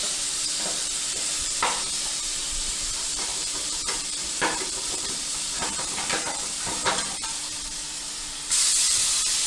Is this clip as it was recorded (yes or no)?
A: no